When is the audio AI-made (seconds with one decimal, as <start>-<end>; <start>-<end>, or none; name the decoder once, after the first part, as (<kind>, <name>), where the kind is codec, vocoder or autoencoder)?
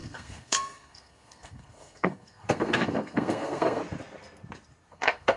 0.0-3.8 (codec, SNAC); 4.9-5.4